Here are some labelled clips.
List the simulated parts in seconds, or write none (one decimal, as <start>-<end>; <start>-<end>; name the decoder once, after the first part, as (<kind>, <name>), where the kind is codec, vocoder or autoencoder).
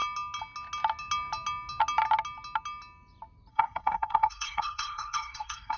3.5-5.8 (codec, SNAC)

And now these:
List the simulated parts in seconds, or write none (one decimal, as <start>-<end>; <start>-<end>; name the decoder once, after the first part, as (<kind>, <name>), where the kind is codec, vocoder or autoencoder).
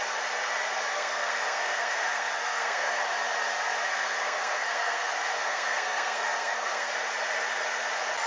0.9-3.0 (codec, SNAC); 3.9-6.9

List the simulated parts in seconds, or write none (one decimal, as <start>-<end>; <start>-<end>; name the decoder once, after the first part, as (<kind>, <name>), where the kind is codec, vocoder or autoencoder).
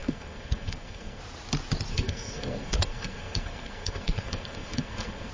0.0-1.2 (codec, SNAC); 1.9-5.3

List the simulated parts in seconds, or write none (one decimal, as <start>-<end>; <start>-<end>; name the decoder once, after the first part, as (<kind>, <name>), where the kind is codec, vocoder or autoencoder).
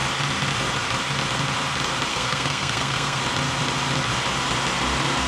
2.1-3.2 (codec, SNAC)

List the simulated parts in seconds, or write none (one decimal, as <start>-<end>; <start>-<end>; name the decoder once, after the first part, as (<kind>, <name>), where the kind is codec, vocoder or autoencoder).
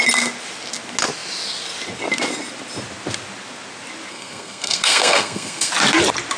4.1-5.7 (codec, SNAC)